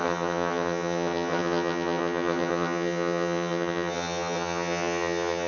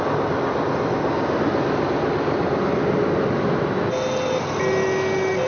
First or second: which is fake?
first